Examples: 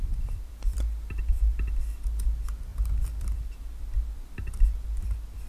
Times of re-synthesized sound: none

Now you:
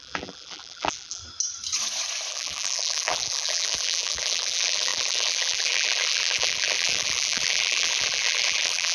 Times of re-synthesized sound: 0.0-1.2 (vocoder, BigVGAN v2); 2.3-8.9

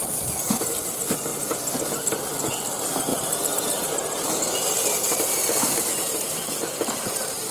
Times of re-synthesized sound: 3.1-6.6 (vocoder, BigVGAN v2)

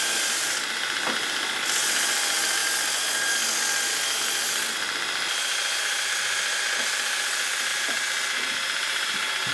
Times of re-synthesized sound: 7.7-9.5 (vocoder, BigVGAN v2)

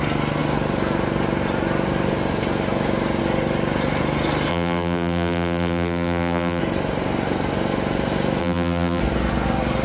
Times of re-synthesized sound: 4.5-6.6 (vocoder, BigVGAN v2); 8.4-9.0

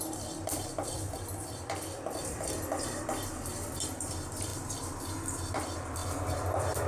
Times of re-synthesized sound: 0.0-4.5 (vocoder, BigVGAN v2); 5.5-6.0

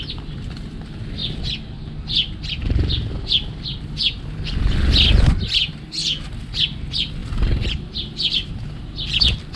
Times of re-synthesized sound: 6.0-6.5 (vocoder, BigVGAN v2); 7.2-9.2

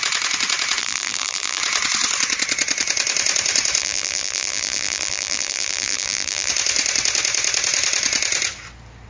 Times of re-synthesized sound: 0.8-1.6 (vocoder, BigVGAN v2); 3.8-6.5